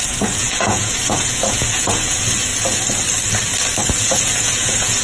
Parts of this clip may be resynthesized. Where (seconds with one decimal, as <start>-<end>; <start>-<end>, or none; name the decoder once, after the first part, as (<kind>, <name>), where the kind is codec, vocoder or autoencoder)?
0.0-2.5 (vocoder, Vocos); 3.9-5.0